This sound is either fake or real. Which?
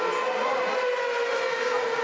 real